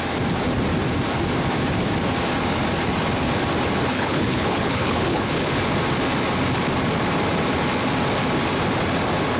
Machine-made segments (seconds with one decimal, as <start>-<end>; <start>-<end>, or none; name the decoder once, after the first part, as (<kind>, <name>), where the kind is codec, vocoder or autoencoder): 3.9-5.6 (codec, HILCodec)